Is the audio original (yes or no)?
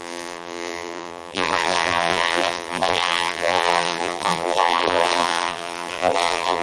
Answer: no